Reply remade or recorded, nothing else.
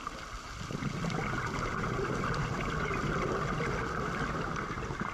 recorded